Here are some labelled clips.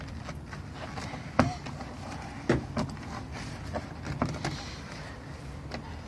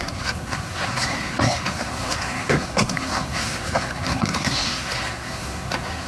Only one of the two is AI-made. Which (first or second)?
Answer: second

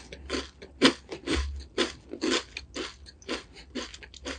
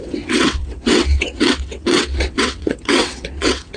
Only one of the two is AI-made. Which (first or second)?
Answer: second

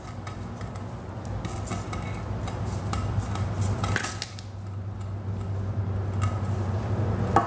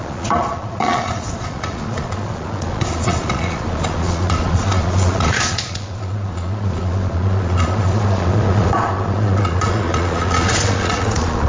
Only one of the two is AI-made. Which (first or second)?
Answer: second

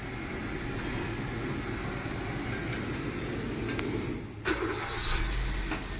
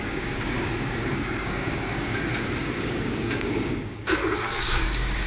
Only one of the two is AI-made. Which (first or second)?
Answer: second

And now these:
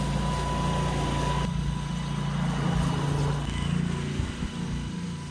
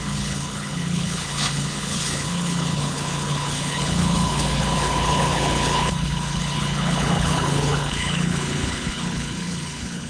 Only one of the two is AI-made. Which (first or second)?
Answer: second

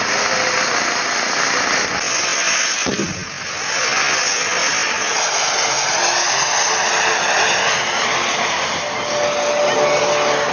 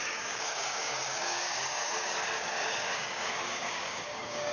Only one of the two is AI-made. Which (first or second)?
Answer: second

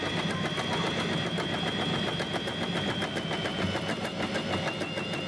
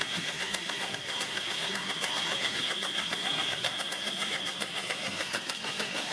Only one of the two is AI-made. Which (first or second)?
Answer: second